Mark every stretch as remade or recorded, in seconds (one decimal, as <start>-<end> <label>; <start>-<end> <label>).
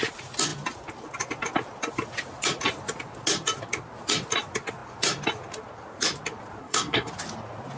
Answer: 0.0-6.6 recorded; 6.6-7.1 remade; 7.1-7.8 recorded